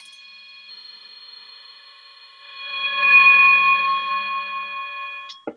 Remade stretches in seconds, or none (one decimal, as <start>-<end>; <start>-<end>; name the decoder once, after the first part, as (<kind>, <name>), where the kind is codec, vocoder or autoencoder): 0.7-4.1 (autoencoder, DAC-VAE)